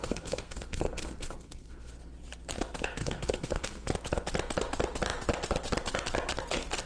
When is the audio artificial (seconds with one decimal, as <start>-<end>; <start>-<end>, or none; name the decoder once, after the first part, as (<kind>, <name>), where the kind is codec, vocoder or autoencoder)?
0.0-1.9 (codec, SNAC); 3.0-3.9

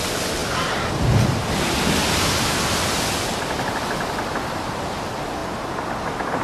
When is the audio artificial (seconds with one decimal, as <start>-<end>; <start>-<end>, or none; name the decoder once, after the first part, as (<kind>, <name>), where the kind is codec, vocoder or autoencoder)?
none

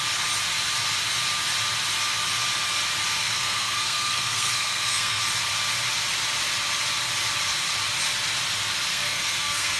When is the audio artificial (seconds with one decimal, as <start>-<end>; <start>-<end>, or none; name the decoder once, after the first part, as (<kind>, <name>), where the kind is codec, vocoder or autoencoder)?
3.2-5.2 (codec, SNAC); 8.9-9.8

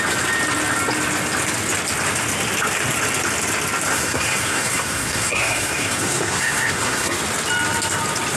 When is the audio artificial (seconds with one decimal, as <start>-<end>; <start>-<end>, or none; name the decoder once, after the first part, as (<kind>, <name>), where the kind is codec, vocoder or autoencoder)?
3.9-7.2 (codec, SNAC)

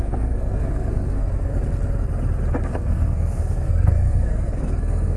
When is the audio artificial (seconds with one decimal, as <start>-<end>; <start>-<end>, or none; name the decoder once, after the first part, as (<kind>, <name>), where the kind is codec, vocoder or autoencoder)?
0.0-1.5 (codec, SNAC); 2.7-5.2

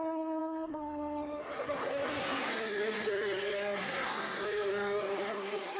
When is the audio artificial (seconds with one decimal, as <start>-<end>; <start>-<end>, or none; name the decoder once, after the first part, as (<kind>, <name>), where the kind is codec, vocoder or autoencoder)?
0.0-5.8 (codec, SNAC)

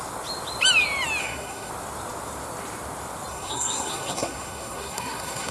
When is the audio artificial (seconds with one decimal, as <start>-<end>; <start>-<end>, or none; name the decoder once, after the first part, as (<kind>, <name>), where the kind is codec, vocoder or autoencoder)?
1.2-1.7 (codec, SNAC); 3.3-5.5

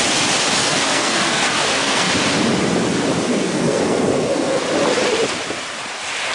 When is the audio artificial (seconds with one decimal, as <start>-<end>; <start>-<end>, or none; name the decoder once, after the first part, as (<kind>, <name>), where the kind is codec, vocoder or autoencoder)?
0.6-2.1 (codec, SNAC); 3.3-4.6